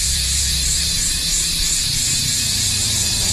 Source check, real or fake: fake